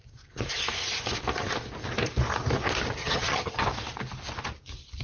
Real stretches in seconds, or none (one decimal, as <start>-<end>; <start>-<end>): 0.0-3.0; 3.6-5.0